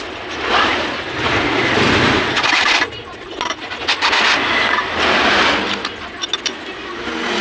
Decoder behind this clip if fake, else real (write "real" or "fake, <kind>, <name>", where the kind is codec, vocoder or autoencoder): real